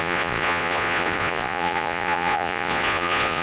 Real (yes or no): no